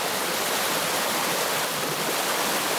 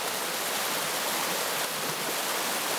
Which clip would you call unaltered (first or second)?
second